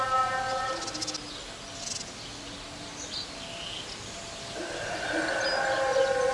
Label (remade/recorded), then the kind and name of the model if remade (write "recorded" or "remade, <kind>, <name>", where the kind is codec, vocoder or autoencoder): recorded